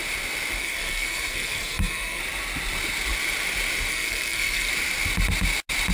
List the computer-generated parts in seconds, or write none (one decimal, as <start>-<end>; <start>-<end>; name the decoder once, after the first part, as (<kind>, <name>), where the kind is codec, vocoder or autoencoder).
0.6-2.2 (codec, SNAC); 3.9-4.7

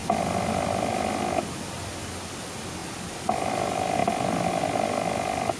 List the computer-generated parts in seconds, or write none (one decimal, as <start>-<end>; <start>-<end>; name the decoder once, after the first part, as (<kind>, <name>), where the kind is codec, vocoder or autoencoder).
none

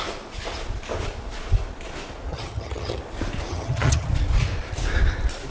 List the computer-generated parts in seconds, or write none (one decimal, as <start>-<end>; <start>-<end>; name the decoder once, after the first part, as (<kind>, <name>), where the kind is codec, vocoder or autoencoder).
2.3-3.0 (vocoder, HiFi-GAN); 3.5-4.1

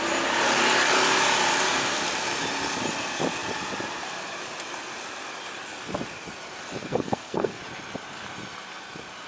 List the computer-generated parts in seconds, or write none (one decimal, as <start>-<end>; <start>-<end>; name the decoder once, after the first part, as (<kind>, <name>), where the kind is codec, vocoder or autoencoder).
6.8-7.6 (codec, SNAC)

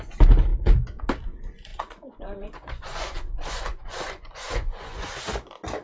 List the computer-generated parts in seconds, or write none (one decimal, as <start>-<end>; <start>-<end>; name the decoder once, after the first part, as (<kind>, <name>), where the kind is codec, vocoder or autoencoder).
1.7-5.2 (vocoder, Vocos)

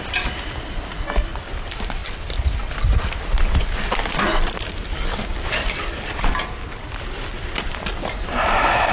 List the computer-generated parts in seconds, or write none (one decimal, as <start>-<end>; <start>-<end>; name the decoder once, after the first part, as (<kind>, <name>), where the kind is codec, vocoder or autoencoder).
none